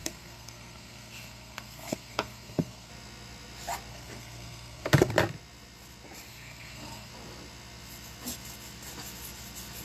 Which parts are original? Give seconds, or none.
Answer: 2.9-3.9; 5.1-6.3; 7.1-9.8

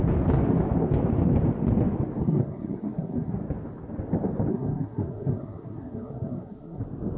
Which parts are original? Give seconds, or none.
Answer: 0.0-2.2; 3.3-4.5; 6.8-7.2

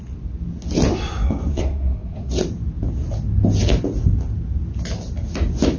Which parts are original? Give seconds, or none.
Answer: 0.0-1.5; 2.3-5.8